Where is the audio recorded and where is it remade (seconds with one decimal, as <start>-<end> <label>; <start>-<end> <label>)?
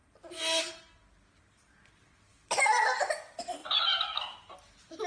0.0-1.9 remade; 1.9-2.3 recorded; 2.3-2.8 remade; 2.8-3.6 recorded; 3.6-4.2 remade; 4.2-5.1 recorded